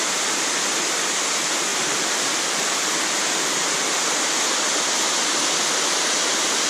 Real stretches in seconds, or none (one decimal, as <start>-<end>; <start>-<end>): 0.0-1.7; 4.8-6.7